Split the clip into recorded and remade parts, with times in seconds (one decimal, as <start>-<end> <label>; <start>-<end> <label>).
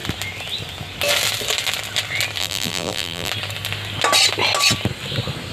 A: 0.0-2.4 recorded; 2.4-3.3 remade; 3.3-5.5 recorded